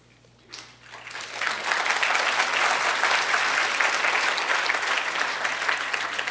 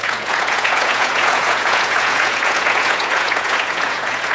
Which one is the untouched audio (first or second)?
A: first